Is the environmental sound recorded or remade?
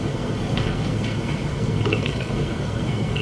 remade